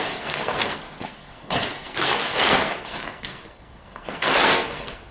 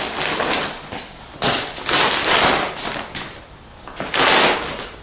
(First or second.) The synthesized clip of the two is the first